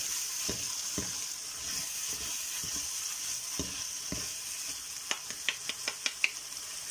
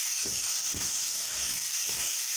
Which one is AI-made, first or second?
second